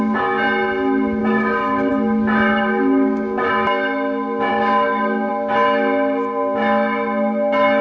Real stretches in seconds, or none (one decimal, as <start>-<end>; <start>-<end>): 0.0-1.2; 1.9-2.5; 3.5-4.5; 5.3-7.8